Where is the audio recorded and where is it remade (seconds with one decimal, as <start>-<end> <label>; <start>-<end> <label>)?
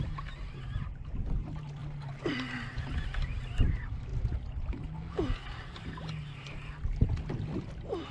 0.0-1.8 remade; 1.8-3.6 recorded; 3.6-4.1 remade; 4.1-7.6 recorded; 7.6-8.1 remade